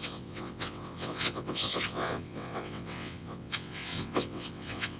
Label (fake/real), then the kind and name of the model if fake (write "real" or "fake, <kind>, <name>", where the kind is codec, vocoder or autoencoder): fake, vocoder, WaveNeXt